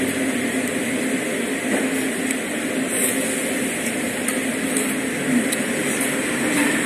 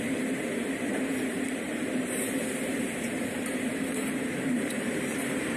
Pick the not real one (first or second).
second